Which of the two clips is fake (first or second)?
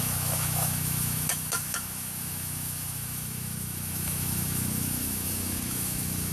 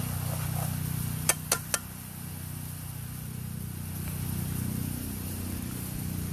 first